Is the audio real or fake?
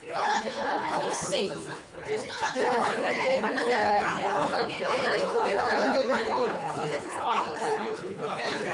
fake